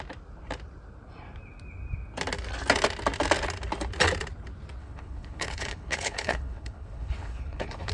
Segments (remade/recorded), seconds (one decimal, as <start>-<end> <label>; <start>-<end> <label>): 0.0-4.8 recorded; 4.8-7.9 remade